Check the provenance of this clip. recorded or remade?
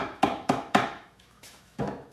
remade